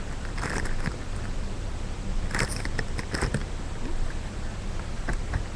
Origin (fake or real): real